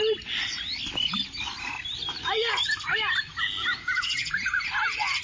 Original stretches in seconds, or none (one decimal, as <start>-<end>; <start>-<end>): 0.0-3.7; 4.6-5.2